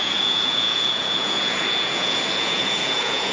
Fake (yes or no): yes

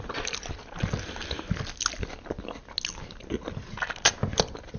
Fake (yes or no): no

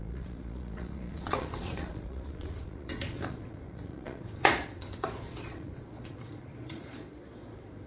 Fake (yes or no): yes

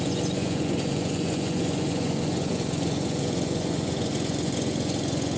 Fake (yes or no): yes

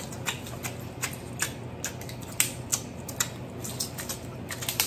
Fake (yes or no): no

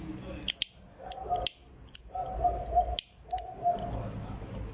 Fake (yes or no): no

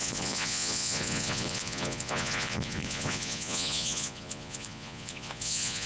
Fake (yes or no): yes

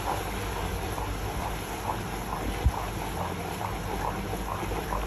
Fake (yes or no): no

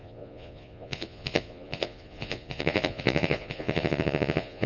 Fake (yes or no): yes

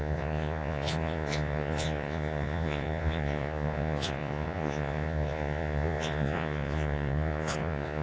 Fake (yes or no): yes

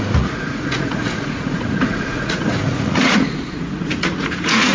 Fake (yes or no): yes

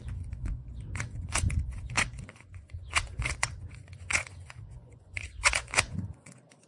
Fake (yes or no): yes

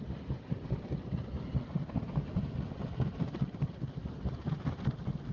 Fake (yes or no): no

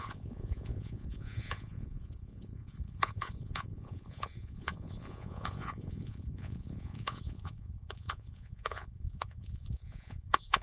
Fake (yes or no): yes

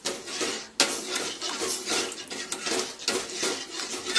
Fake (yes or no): no